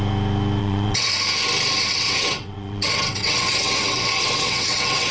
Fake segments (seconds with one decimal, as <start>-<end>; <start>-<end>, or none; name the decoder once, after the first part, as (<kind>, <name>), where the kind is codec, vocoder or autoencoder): 0.6-1.1 (vocoder, WaveNeXt); 1.9-5.1

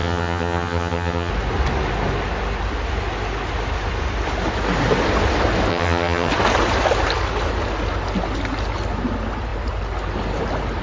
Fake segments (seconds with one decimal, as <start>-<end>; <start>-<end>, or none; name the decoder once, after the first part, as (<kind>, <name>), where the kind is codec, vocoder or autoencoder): 0.0-1.3 (vocoder, HiFi-GAN); 5.7-6.3

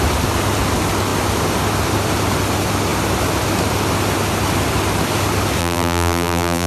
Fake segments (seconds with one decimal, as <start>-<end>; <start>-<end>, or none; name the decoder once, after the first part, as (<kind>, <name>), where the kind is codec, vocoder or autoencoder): 5.6-6.7 (vocoder, BigVGAN v2)

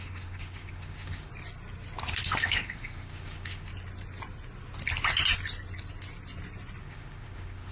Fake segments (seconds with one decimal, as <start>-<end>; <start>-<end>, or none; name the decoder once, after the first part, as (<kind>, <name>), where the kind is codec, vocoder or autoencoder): 0.0-1.3 (autoencoder, DAC-VAE); 2.4-3.7; 6.8-7.7

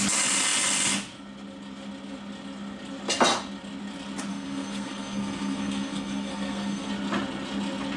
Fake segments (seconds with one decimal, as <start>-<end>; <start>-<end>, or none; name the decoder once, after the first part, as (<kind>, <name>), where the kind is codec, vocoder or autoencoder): 4.3-6.9 (codec, SNAC)